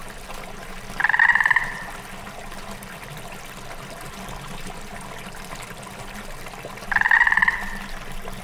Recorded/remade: recorded